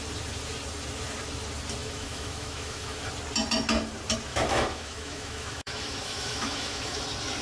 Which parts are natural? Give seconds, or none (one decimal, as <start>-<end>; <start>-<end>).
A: 0.0-1.8; 3.0-4.3; 7.0-7.4